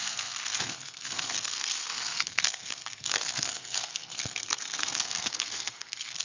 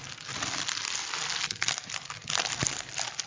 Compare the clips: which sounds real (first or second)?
second